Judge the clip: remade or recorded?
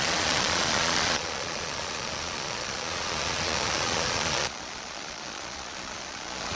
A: remade